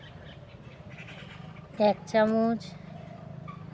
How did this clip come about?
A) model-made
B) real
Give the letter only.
B